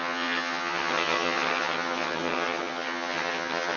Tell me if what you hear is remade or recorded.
remade